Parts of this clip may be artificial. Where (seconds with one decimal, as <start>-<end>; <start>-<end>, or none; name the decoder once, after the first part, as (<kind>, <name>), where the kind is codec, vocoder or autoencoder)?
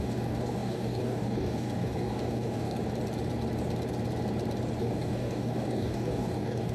0.0-2.8 (codec, DAC); 4.8-6.7